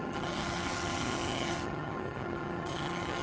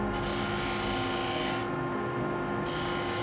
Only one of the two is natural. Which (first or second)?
second